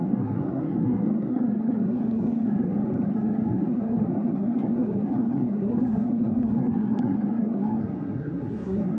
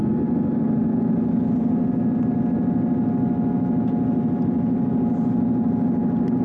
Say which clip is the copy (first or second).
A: first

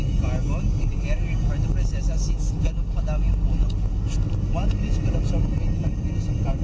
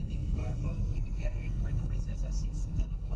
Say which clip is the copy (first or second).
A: second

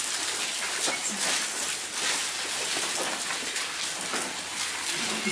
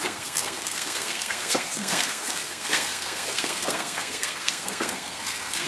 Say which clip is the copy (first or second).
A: second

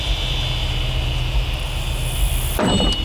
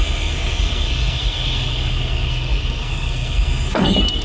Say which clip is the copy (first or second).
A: second